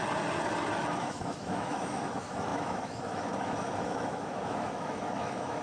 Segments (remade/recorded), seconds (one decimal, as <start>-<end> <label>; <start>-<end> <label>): 0.0-0.9 recorded; 0.9-5.6 remade